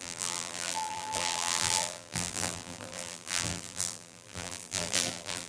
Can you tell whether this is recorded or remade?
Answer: remade